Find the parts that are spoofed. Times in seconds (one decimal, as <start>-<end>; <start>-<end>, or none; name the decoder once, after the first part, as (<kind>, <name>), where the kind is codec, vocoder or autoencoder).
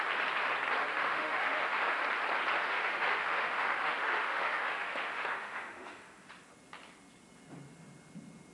0.9-2.0 (autoencoder, DAC-VAE); 2.5-6.3